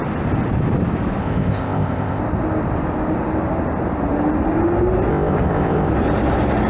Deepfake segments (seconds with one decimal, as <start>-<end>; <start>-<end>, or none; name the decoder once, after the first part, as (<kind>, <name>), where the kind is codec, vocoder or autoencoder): 1.2-2.2 (codec, ZipCodec); 5.1-5.9